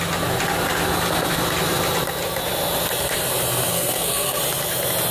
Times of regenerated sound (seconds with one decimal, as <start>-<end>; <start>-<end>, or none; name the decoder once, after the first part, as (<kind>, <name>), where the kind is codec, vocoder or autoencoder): 3.7-4.4 (codec, SNAC)